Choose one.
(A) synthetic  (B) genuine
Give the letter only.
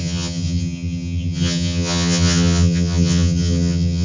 A